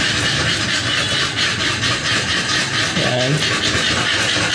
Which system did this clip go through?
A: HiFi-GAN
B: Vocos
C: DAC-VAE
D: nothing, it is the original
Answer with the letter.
D